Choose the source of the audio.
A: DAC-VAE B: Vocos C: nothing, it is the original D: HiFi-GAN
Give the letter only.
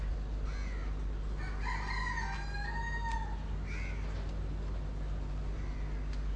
C